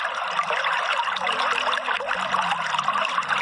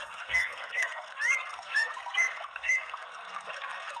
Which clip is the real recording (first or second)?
first